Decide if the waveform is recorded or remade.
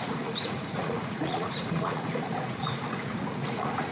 remade